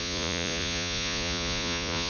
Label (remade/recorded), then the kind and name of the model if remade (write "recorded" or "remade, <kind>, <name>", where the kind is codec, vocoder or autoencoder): remade, vocoder, Vocos